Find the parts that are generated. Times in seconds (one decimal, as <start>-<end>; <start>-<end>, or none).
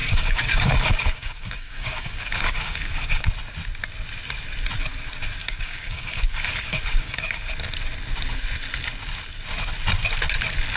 0.0-3.3; 5.4-7.5